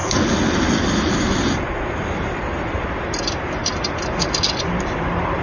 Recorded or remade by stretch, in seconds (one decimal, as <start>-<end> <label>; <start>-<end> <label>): 0.0-5.4 recorded